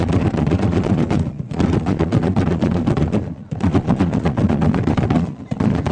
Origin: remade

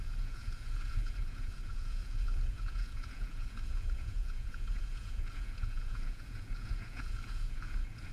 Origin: remade